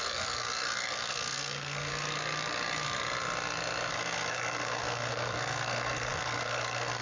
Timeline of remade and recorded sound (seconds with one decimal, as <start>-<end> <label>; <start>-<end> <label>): 0.0-1.9 remade; 1.9-3.9 recorded; 3.9-7.0 remade